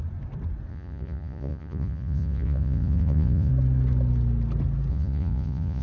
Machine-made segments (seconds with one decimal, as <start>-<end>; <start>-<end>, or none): 0.7-3.5; 4.9-5.8